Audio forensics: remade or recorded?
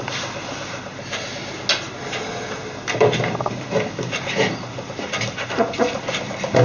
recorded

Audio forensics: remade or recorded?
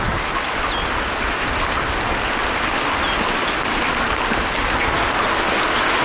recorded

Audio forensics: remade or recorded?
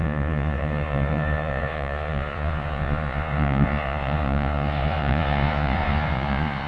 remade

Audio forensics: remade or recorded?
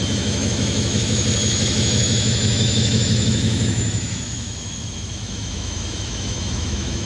remade